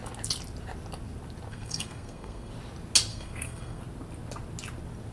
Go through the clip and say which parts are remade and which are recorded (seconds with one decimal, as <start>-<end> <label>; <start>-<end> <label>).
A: 0.0-1.5 recorded; 1.5-2.5 remade; 2.5-3.1 recorded; 3.1-3.8 remade; 3.8-5.1 recorded